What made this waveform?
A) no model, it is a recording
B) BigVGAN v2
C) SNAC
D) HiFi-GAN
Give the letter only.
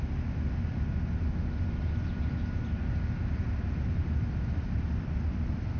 A